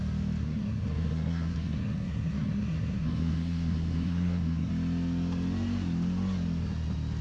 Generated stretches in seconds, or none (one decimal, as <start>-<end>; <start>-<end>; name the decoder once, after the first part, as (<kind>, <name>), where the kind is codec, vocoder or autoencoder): 0.4-4.7 (codec, SNAC)